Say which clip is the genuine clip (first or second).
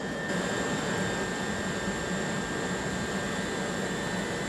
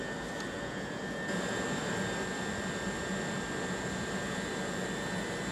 second